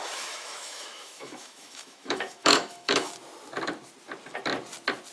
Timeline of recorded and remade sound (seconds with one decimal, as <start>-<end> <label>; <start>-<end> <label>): 0.0-3.1 remade; 3.1-5.1 recorded

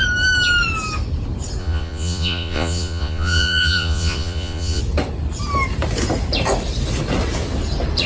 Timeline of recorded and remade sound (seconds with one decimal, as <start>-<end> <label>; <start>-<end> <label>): 0.0-1.6 recorded; 1.6-4.8 remade; 4.8-8.1 recorded

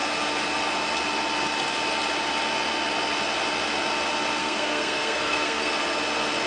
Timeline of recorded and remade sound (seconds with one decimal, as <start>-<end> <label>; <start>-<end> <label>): 0.0-4.4 recorded; 4.4-5.7 remade; 5.7-6.5 recorded

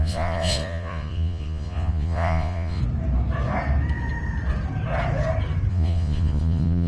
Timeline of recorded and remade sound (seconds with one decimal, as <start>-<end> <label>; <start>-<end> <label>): 0.0-2.8 remade; 2.8-5.7 recorded; 5.7-6.9 remade